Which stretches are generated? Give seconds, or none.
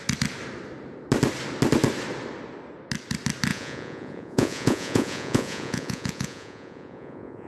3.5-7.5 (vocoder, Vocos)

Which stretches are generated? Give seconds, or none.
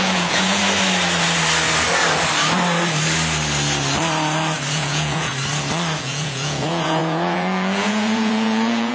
0.0-0.6 (vocoder, Vocos); 4.7-5.3; 6.0-8.9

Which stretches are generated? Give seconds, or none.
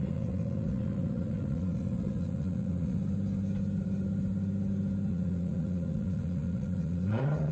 0.0-3.0 (vocoder, Vocos); 5.1-7.5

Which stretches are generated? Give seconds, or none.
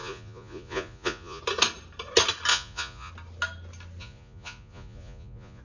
0.0-1.4 (vocoder, Vocos); 2.5-3.1; 4.0-5.6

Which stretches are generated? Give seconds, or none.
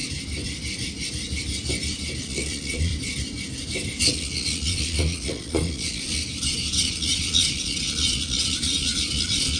2.2-2.9 (vocoder, Vocos); 4.0-6.2; 6.8-9.6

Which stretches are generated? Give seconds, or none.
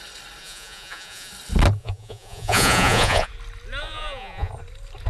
0.4-1.3 (vocoder, Vocos); 1.8-3.3; 3.8-4.5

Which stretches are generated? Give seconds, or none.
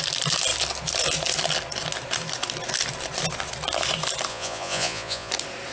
4.3-5.3 (vocoder, Vocos)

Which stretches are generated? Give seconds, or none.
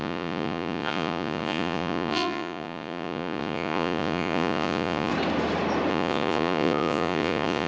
0.0-5.1 (vocoder, Vocos); 5.9-7.7